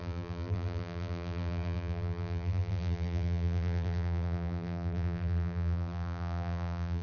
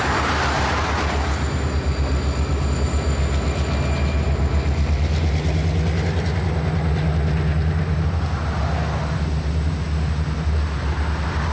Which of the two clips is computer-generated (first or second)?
first